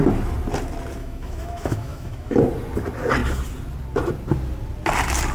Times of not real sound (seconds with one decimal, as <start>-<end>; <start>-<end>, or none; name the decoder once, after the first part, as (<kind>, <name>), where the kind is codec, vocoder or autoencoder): 1.0-2.4 (autoencoder, DAC-VAE)